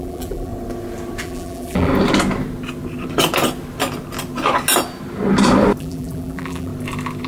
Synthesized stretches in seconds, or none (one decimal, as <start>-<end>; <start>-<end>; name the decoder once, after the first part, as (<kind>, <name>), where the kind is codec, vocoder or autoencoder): 0.0-0.5 (vocoder, BigVGAN v2); 1.2-1.9; 5.8-6.7